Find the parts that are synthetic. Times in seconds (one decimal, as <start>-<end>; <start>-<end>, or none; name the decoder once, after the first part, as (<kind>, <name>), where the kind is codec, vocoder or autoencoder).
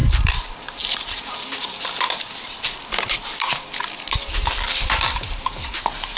0.0-1.5 (vocoder, BigVGAN v2); 4.8-6.2